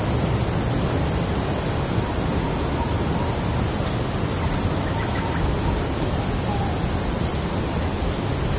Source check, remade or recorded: recorded